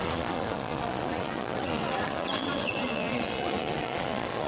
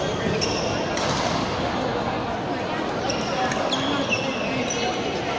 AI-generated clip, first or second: first